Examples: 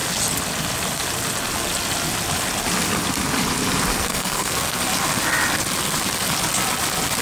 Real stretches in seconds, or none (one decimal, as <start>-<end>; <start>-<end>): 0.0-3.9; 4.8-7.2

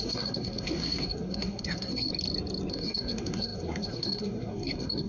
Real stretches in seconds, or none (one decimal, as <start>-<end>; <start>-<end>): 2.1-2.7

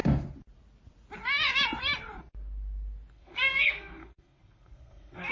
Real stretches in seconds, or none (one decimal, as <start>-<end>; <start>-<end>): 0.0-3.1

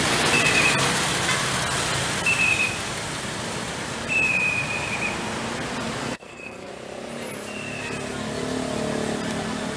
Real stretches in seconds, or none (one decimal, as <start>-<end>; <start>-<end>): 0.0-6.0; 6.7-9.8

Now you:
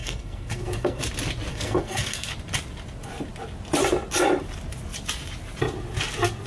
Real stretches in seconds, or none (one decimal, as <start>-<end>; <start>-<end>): 1.0-1.5; 2.3-6.5

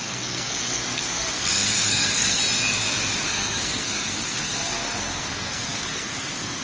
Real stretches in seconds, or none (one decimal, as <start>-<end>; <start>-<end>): 2.4-3.2